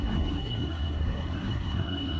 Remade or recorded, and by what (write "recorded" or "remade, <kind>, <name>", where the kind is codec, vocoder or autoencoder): remade, codec, SNAC